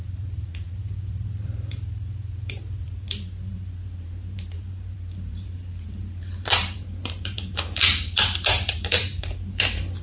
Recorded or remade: remade